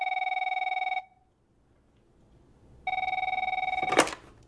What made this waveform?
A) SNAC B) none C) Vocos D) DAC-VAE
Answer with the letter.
B